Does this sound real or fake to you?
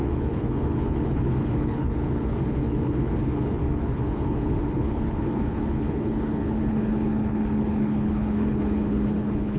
fake